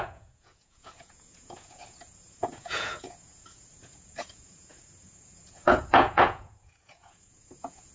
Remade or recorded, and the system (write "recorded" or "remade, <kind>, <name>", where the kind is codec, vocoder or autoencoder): remade, vocoder, Vocos